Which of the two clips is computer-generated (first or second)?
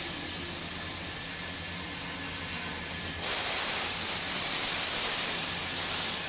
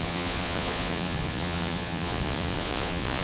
second